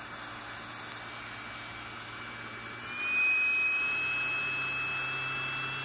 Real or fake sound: real